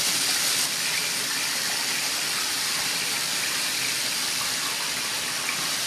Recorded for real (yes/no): yes